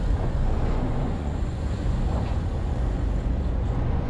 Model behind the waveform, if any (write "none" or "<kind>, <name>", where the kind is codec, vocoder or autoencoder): vocoder, Vocos